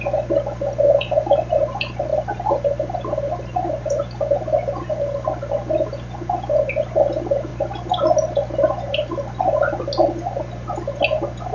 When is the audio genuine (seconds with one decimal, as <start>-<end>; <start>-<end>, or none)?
0.0-11.5